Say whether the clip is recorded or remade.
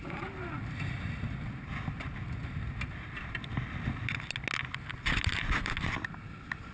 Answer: recorded